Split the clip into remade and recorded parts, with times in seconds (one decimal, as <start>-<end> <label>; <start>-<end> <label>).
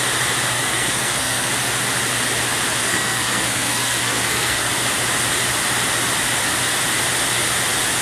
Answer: 0.0-0.5 recorded; 0.5-1.5 remade; 1.5-2.8 recorded; 2.8-4.7 remade; 4.7-8.0 recorded